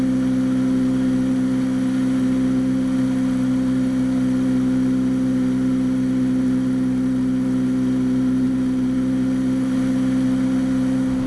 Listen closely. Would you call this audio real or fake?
real